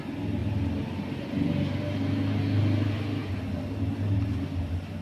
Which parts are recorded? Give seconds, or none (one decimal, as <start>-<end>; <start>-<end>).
0.0-5.0

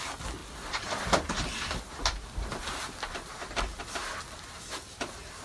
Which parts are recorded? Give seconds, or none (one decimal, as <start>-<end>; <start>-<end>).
0.0-5.4